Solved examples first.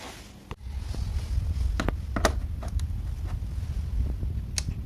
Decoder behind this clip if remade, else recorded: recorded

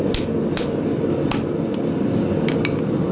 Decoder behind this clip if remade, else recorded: recorded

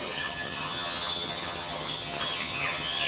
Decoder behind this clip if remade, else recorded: remade, vocoder, HiFi-GAN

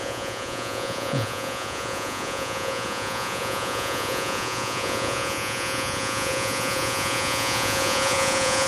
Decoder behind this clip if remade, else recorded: remade, vocoder, Vocos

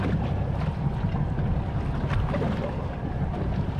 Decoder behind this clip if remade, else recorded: recorded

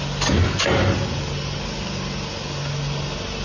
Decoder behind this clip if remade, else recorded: recorded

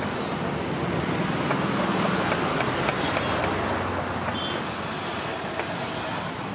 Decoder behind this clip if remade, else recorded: recorded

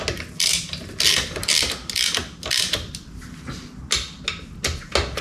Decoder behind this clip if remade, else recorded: recorded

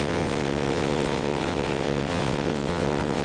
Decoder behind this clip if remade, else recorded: remade, vocoder, WaveNeXt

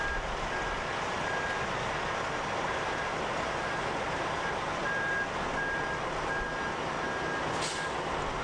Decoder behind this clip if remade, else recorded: recorded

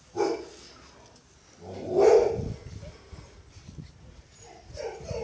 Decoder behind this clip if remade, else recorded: recorded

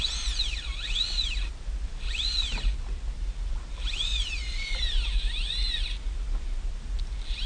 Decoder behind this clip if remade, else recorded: recorded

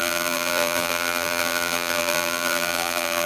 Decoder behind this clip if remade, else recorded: remade, vocoder, BigVGAN v2